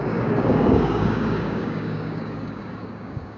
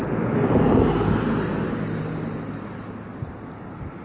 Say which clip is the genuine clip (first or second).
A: second